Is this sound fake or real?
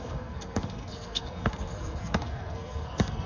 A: fake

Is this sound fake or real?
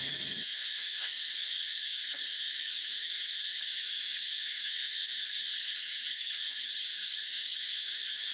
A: fake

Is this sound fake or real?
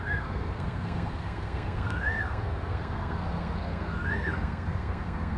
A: fake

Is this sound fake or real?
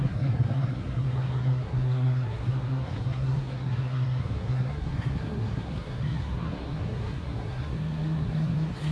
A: fake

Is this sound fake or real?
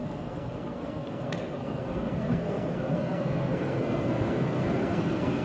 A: fake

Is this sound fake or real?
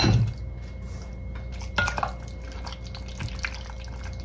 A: real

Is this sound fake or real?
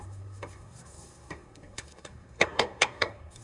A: fake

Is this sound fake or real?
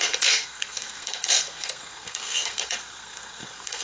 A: fake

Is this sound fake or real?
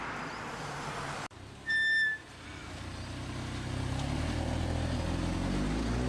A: real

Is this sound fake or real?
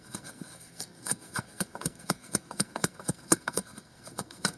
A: fake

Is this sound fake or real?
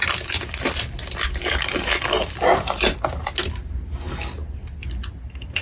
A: real